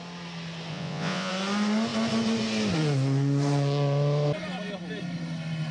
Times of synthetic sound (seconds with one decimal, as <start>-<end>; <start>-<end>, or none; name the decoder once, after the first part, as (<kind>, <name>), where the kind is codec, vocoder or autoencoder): 0.7-1.3 (vocoder, Vocos)